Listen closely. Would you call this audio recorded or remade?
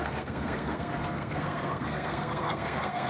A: remade